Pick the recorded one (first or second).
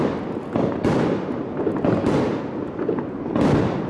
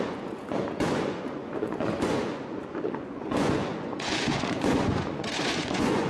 first